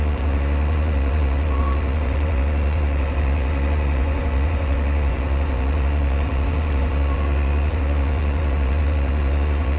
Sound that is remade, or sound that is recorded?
remade